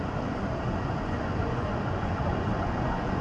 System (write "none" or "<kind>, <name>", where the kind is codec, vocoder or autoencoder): vocoder, Vocos